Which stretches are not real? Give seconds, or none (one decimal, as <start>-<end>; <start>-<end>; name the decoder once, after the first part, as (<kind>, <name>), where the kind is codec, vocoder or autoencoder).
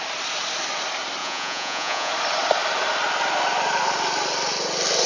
1.2-2.1 (vocoder, Vocos)